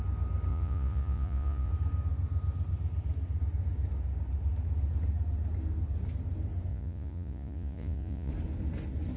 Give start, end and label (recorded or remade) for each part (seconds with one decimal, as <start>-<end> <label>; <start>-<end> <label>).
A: 0.0-0.5 recorded; 0.5-1.7 remade; 1.7-6.7 recorded; 6.7-8.3 remade; 8.3-9.2 recorded